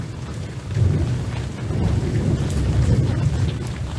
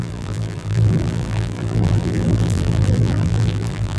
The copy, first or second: second